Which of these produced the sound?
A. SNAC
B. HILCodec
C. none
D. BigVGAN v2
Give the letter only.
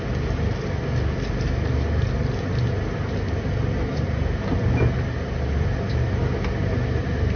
C